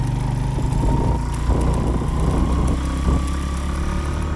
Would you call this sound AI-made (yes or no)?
no